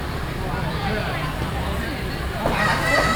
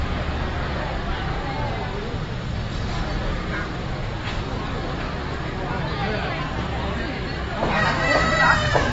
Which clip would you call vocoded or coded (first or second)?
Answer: first